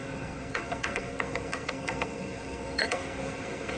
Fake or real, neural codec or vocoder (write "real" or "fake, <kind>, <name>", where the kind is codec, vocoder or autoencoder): fake, codec, SNAC